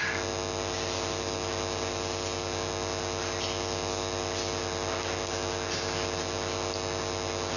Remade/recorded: recorded